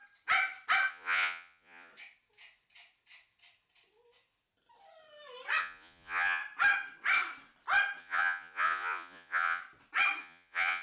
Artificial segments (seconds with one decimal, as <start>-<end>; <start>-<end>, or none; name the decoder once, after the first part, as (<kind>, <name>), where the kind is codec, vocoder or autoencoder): 0.9-1.9 (vocoder, Vocos); 5.6-6.4; 8.0-9.6; 10.2-10.8